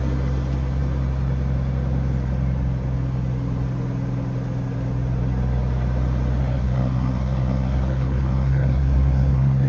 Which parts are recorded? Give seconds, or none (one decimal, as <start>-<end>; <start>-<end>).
0.0-6.4